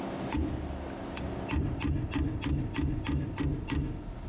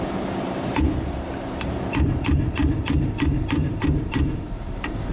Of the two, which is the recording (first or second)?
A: first